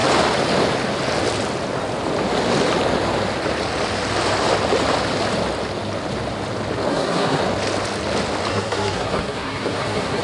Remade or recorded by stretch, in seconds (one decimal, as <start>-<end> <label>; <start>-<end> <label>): 0.0-6.9 recorded; 6.9-7.4 remade; 7.4-8.5 recorded; 8.5-10.2 remade